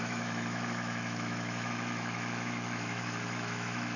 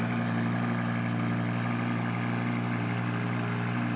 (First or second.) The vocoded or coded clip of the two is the first